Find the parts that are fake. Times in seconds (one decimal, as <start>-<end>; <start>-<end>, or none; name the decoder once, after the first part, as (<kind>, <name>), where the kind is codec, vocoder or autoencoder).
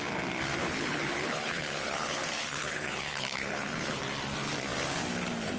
0.6-4.0 (codec, HILCodec)